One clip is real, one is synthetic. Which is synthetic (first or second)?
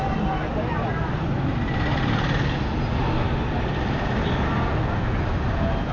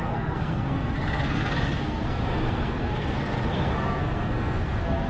second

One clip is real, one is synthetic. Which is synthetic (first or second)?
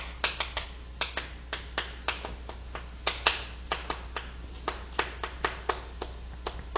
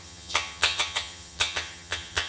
second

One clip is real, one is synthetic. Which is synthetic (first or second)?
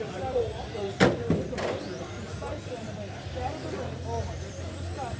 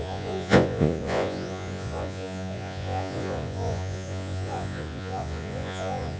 second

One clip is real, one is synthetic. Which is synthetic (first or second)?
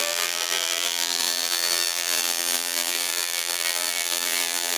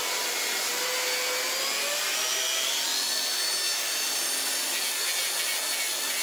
first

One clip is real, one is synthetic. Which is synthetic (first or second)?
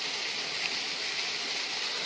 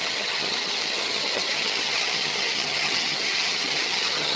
second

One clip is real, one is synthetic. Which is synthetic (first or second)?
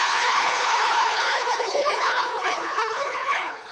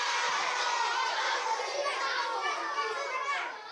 first